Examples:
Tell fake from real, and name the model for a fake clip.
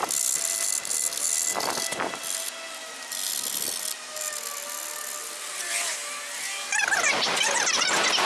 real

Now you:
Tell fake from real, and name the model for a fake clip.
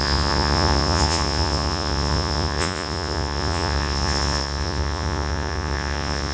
fake, vocoder, Vocos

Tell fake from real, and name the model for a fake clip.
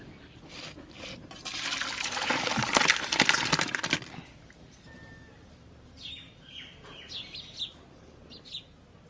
real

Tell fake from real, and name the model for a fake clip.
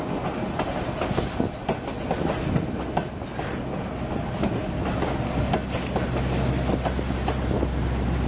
real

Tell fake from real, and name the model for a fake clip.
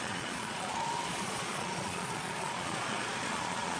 fake, vocoder, Vocos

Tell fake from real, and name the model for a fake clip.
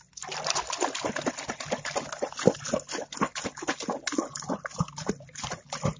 real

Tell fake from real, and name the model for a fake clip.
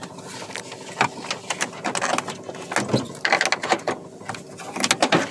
real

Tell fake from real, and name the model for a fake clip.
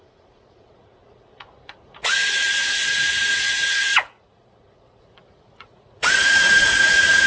fake, vocoder, Vocos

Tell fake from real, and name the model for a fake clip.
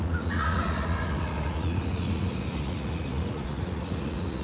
fake, vocoder, Vocos